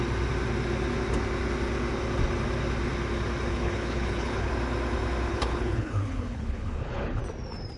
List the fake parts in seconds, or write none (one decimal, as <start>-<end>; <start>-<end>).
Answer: 3.5-4.5; 5.3-7.2